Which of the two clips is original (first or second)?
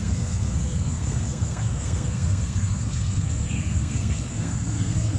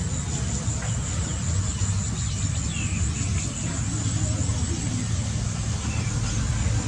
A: second